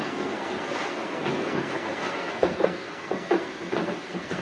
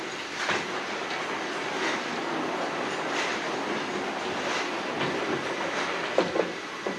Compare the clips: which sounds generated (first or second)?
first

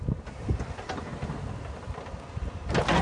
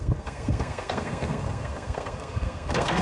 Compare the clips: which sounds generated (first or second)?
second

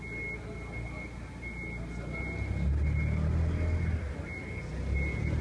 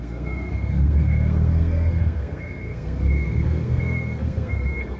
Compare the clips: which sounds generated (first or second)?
second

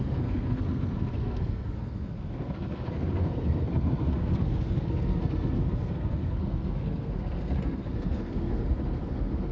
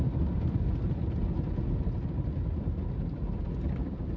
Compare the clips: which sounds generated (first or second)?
first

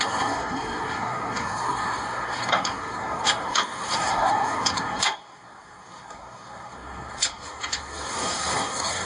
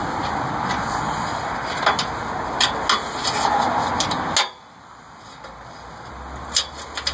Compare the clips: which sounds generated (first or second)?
first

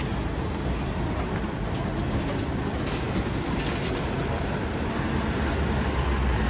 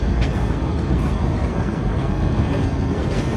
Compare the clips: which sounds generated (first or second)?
second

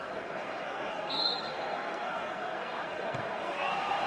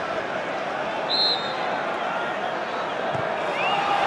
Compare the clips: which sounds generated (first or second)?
first